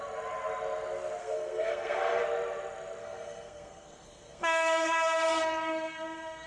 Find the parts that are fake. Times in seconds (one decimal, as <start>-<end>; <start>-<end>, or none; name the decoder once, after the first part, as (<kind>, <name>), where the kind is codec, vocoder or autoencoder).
1.2-2.2 (codec, SNAC); 3.0-6.5